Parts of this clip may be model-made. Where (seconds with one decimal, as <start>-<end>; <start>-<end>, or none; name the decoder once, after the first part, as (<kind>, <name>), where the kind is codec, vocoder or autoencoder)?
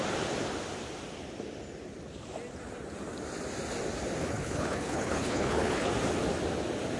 4.2-5.9 (codec, HILCodec)